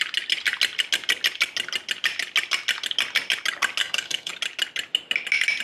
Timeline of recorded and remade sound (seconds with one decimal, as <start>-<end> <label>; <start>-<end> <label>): 0.0-3.8 recorded; 3.8-4.3 remade; 4.3-5.6 recorded